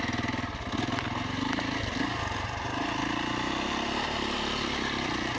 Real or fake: real